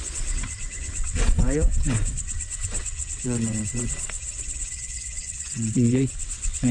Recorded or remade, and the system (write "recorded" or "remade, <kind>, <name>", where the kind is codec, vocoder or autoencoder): remade, vocoder, WaveNeXt